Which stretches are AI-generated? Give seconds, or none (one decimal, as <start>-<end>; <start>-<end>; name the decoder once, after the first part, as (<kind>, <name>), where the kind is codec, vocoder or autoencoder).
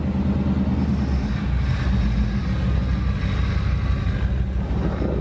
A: none